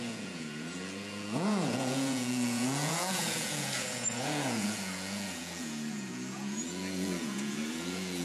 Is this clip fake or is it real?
fake